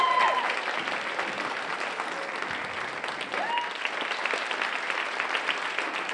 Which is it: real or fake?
real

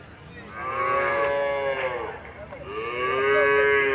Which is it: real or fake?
real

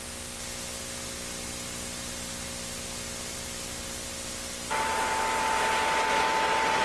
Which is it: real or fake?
real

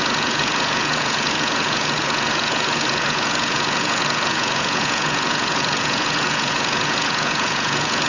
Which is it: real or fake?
fake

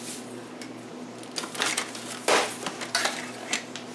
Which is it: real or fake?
real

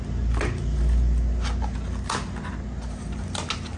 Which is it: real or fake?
real